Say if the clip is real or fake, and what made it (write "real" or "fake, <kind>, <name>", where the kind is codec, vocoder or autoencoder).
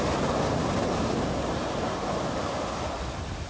real